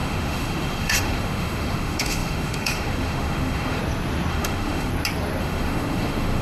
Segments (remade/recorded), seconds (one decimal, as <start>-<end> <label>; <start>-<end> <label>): 0.0-3.8 remade; 3.8-4.3 recorded; 4.3-4.9 remade; 4.9-5.4 recorded; 5.4-6.4 remade